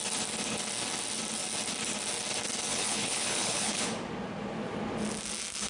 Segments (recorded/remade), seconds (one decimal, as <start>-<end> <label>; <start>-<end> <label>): 0.0-2.7 recorded; 2.7-3.8 remade; 3.8-5.7 recorded